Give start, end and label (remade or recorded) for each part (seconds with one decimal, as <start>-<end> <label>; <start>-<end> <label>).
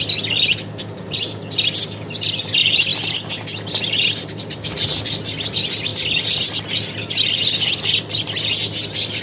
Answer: 0.0-9.2 recorded